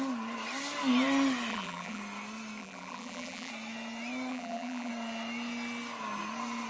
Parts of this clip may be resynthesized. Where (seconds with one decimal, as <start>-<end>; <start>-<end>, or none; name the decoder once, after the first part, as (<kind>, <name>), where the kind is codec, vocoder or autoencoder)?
1.5-2.0 (vocoder, BigVGAN v2); 2.6-3.5; 4.3-4.9